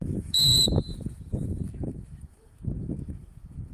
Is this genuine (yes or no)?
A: no